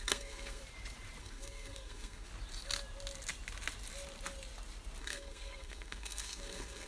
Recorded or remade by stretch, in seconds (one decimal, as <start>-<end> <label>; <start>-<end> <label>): 0.0-0.6 remade; 0.6-1.2 recorded; 1.2-2.3 remade; 2.3-5.0 recorded; 5.0-6.9 remade